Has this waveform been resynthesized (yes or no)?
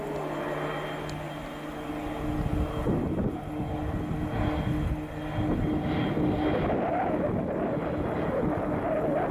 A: no